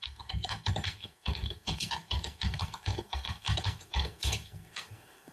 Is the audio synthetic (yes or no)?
yes